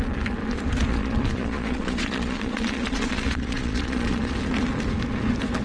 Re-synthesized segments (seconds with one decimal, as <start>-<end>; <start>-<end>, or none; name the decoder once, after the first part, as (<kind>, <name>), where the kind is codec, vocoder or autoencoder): 0.9-4.3 (vocoder, Vocos)